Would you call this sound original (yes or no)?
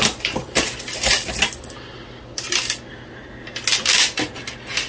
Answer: yes